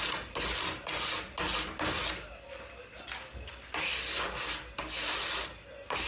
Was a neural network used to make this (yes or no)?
no